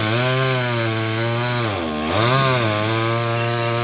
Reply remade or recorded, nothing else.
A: recorded